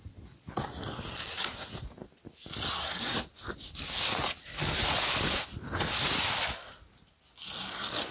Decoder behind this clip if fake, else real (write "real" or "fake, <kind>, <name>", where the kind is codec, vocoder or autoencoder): real